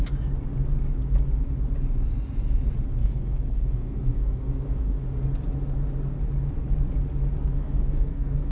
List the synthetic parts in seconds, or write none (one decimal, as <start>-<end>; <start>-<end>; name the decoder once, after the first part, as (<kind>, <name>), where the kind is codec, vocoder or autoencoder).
3.0-5.0 (codec, SNAC); 7.4-8.5